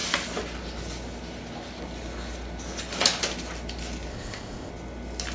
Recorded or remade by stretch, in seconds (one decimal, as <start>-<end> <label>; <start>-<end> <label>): 0.0-4.1 recorded; 4.1-4.7 remade; 4.7-5.3 recorded